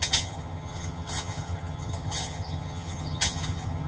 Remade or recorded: remade